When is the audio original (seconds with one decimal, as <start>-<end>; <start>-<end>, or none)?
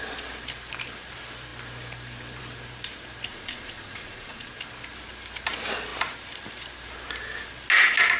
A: 0.0-3.3; 4.5-8.2